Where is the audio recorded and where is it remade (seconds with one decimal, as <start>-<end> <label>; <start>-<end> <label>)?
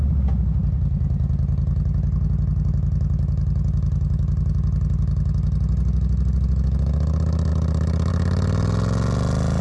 0.0-9.6 recorded